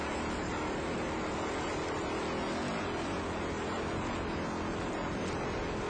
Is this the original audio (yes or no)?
yes